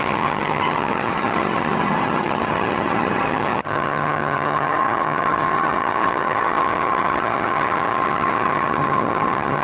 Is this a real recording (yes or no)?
no